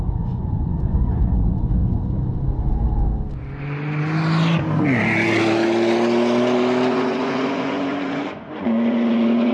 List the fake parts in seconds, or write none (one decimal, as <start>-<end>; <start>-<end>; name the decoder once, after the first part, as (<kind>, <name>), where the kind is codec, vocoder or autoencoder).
0.0-1.8 (vocoder, Vocos); 6.9-9.5